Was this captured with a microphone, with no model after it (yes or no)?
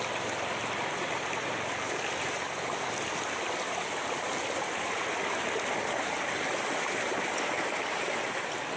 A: yes